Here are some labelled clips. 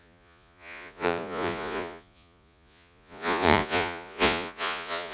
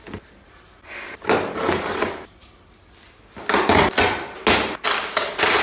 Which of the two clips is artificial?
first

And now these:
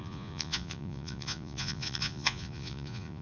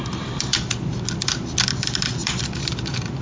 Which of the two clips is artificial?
first